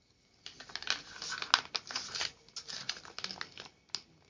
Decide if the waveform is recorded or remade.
recorded